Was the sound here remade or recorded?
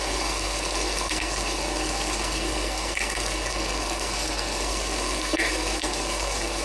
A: remade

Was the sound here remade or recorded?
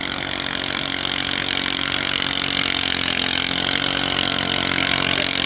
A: recorded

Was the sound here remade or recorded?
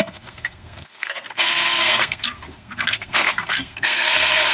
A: remade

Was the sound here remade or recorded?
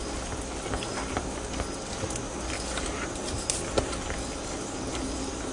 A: recorded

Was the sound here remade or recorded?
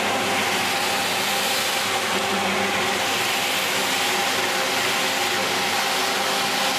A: recorded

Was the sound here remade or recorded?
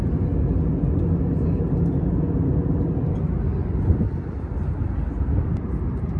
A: recorded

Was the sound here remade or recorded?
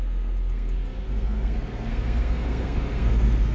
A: remade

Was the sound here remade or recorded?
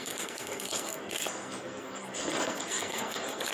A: remade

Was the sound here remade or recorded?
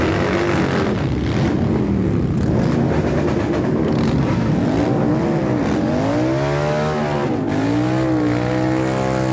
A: recorded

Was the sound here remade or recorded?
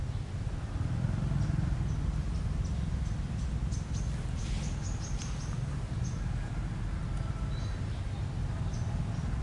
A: recorded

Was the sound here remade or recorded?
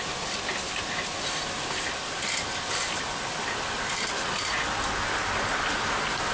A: recorded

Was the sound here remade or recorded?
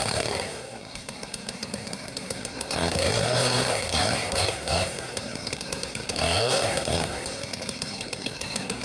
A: remade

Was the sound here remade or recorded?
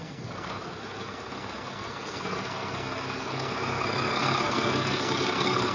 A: remade